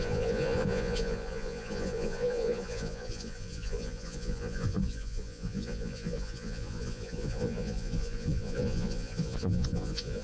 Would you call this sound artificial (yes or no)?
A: yes